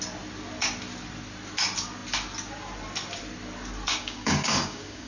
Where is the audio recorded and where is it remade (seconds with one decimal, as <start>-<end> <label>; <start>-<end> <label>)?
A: 0.0-3.9 recorded; 3.9-5.1 remade